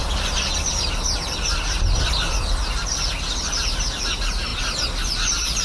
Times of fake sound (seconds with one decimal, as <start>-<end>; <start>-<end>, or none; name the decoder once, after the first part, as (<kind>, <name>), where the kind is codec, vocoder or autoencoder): none